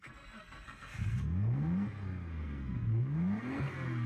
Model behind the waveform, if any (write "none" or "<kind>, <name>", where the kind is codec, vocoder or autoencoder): codec, SNAC